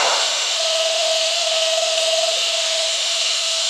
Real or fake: fake